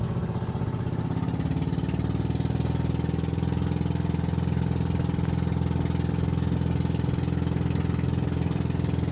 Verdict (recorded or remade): recorded